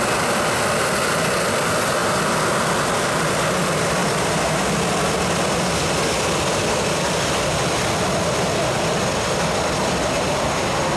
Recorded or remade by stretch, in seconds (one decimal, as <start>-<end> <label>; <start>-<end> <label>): 0.0-11.0 recorded